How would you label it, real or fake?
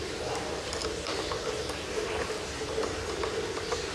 real